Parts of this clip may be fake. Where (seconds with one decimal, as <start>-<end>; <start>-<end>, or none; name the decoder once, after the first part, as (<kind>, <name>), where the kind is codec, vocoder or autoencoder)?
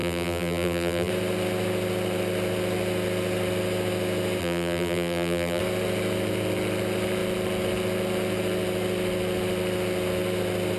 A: 0.0-1.1 (vocoder, BigVGAN v2); 4.4-5.6